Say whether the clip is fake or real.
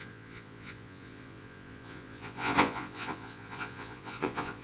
fake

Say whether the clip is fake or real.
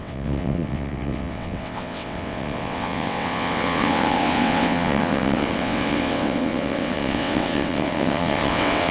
fake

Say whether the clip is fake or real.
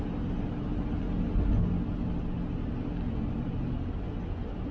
real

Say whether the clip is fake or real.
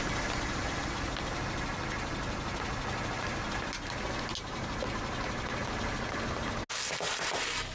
real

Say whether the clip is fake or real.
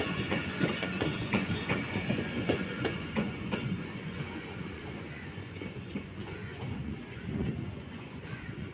fake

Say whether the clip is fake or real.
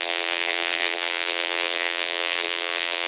fake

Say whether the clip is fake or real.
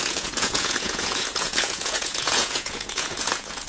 fake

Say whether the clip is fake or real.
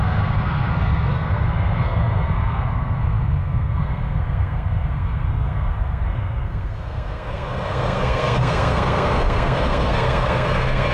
fake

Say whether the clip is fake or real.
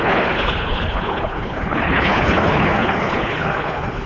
fake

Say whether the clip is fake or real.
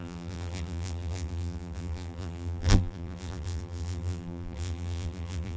fake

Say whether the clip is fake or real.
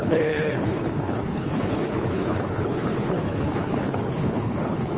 fake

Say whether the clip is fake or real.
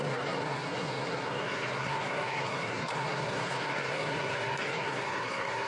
fake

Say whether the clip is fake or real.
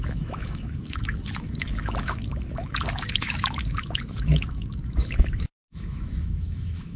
fake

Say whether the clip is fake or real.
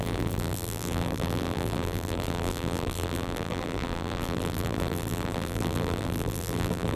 fake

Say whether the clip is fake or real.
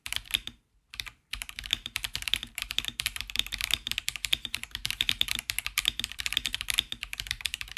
fake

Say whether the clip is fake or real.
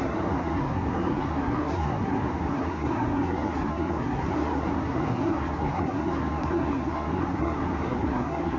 fake